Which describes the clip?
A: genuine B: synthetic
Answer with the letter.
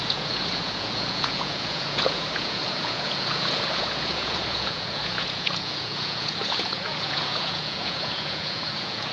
B